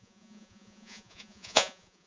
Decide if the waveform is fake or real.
fake